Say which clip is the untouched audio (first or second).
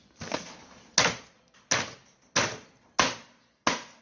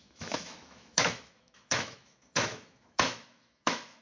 first